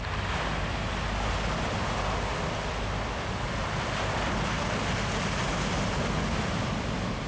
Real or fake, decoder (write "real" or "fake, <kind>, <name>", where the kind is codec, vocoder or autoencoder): real